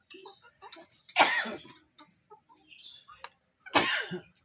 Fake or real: real